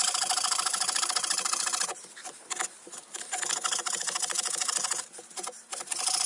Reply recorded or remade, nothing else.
remade